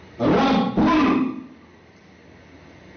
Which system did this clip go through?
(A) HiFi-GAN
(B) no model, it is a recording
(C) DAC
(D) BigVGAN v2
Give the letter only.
B